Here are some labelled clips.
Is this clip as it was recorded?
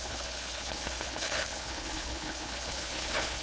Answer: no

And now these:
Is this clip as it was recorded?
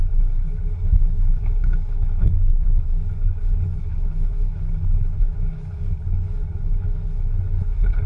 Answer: no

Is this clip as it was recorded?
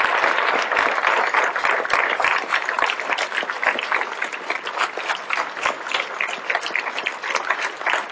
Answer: yes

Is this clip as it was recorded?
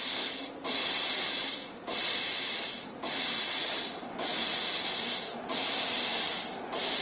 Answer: yes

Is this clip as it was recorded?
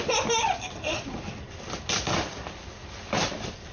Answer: yes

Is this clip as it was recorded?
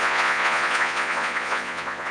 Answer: no